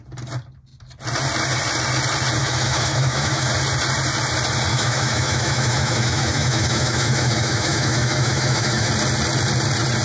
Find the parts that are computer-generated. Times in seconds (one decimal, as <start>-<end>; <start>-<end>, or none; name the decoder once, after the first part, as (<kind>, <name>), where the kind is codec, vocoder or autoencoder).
2.4-3.5 (autoencoder, DAC-VAE); 4.7-8.9